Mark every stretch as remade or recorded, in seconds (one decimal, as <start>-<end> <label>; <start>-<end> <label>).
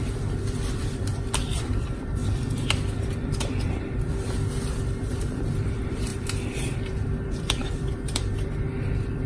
0.0-2.2 remade; 2.2-3.0 recorded; 3.0-3.5 remade; 3.5-4.0 recorded; 4.0-9.3 remade